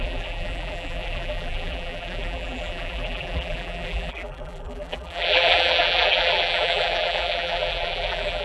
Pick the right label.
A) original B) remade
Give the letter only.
B